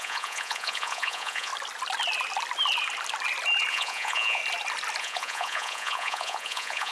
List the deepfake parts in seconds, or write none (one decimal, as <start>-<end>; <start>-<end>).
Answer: 0.0-1.5; 3.7-4.4; 5.0-6.9